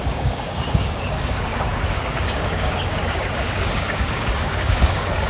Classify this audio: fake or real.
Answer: fake